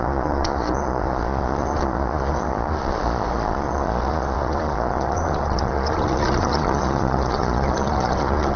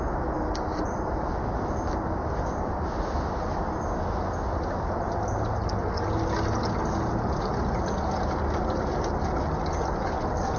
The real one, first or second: second